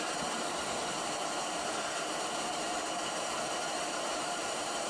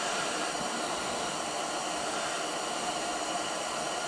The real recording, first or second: second